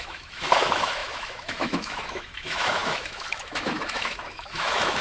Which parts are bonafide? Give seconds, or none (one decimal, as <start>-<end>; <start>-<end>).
none